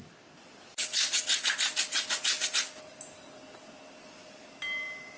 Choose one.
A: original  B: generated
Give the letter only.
A